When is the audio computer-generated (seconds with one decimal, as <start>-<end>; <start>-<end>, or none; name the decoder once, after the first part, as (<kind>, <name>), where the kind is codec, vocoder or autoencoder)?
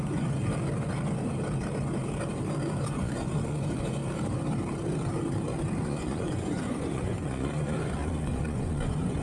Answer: 0.0-0.4 (vocoder, Vocos); 2.9-4.0; 5.8-9.2